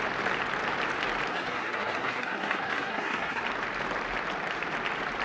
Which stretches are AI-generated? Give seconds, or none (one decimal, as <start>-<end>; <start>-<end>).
1.3-3.4